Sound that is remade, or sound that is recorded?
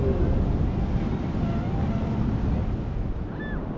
recorded